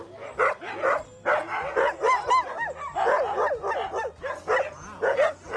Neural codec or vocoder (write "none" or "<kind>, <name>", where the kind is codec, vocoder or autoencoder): none